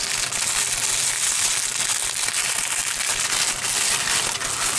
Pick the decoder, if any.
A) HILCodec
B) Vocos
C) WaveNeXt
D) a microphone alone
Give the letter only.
D